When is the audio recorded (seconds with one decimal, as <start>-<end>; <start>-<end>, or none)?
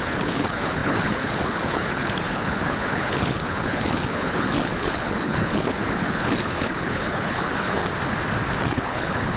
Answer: 7.8-8.6